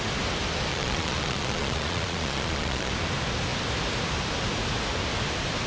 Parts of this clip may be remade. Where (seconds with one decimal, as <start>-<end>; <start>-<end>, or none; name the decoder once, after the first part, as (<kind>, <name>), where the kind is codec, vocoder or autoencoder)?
0.7-2.9 (vocoder, Vocos)